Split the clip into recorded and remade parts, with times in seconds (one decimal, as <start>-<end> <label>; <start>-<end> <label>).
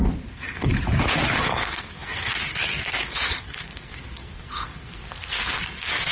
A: 0.0-0.7 remade; 0.7-1.4 recorded; 1.4-6.1 remade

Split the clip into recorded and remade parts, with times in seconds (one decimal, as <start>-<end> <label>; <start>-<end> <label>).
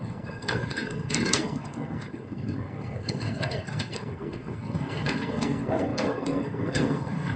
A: 0.0-7.4 remade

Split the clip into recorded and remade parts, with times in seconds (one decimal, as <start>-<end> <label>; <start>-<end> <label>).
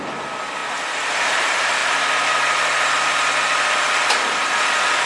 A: 0.0-5.1 recorded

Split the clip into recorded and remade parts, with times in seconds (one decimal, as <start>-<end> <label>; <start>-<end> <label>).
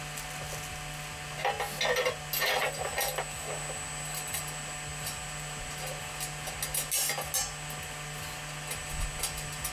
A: 0.0-9.7 recorded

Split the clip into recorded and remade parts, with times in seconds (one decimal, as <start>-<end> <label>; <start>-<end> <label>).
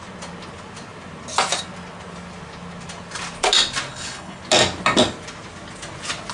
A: 0.0-3.9 recorded; 3.9-4.4 remade; 4.4-6.3 recorded